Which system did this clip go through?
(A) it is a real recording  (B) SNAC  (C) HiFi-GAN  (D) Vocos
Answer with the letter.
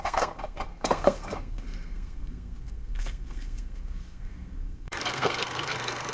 B